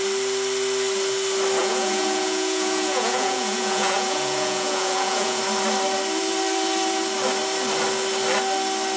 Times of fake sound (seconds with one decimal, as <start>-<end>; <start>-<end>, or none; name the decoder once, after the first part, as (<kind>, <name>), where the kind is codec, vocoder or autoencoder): 1.6-5.4 (vocoder, Vocos)